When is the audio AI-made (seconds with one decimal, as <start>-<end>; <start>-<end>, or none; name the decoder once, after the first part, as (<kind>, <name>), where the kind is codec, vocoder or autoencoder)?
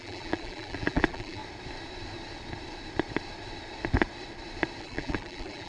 0.0-1.4 (vocoder, BigVGAN v2); 4.8-5.7